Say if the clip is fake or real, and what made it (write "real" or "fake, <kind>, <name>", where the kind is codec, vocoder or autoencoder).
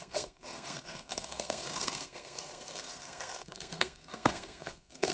fake, codec, SNAC